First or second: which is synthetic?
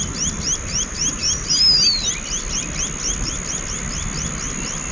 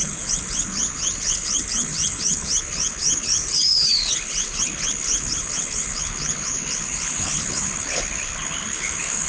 second